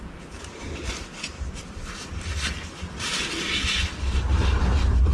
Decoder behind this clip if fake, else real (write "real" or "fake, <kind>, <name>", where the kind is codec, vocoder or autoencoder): real